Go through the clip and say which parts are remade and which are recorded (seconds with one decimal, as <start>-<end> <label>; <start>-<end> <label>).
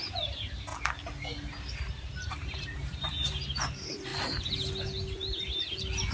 0.0-0.7 remade; 0.7-1.8 recorded; 1.8-4.1 remade; 4.1-6.1 recorded